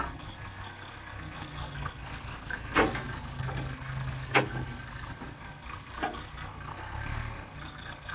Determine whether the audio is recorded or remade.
remade